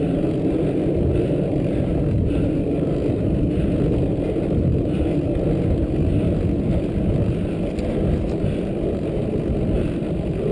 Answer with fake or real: real